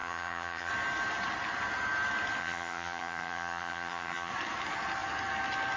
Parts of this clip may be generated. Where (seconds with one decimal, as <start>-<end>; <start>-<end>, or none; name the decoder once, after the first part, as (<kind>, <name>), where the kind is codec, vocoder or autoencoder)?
0.0-0.7 (vocoder, HiFi-GAN); 2.4-4.3

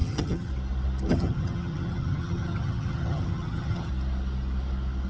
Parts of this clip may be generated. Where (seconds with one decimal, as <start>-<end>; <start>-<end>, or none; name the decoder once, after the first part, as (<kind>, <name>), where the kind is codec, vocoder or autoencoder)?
0.0-0.5 (vocoder, HiFi-GAN); 1.1-3.9

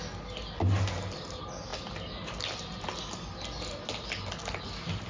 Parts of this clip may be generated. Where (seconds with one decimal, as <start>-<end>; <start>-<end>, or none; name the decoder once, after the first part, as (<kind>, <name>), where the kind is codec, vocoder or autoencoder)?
none

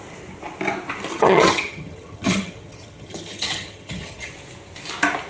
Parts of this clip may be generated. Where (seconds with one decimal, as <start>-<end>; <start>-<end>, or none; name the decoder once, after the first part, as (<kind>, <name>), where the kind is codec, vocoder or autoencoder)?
1.1-4.3 (vocoder, HiFi-GAN)

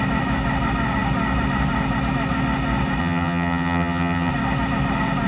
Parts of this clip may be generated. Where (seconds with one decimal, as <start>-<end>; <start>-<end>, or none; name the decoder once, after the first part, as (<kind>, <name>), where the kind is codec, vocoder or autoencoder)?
3.0-4.3 (vocoder, HiFi-GAN)

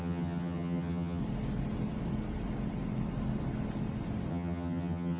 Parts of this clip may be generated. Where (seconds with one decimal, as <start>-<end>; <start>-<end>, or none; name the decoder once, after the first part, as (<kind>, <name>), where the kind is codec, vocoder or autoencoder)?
0.0-1.2 (vocoder, HiFi-GAN); 4.3-5.2

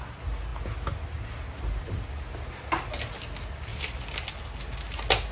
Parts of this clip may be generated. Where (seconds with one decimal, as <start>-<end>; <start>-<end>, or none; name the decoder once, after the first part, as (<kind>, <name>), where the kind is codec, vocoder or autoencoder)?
none

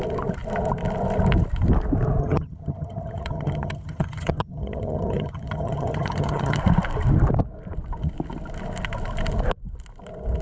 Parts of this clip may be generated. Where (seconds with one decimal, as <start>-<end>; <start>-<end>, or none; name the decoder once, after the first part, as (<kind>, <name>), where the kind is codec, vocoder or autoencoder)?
2.2-6.6 (vocoder, HiFi-GAN)